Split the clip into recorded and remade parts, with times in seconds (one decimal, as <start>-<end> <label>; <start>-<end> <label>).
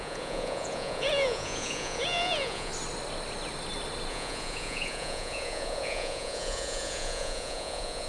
0.0-2.7 remade; 2.7-4.1 recorded; 4.1-8.1 remade